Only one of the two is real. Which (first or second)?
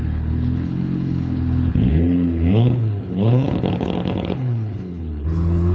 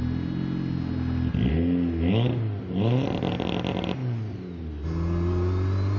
second